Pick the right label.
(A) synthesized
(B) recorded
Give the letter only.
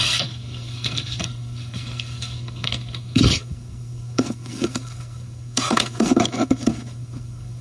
A